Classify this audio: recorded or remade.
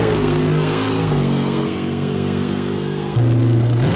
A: remade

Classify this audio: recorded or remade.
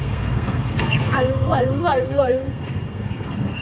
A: remade